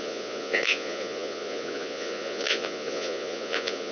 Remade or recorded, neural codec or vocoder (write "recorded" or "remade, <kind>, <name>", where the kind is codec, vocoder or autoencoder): remade, vocoder, Vocos